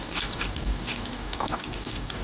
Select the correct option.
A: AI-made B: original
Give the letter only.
A